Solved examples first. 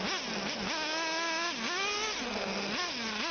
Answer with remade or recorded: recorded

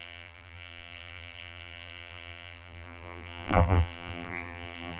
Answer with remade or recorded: remade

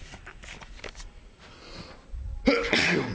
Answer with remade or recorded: recorded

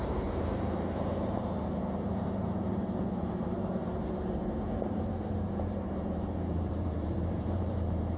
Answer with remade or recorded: remade